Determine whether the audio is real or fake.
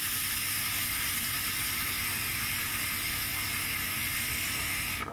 real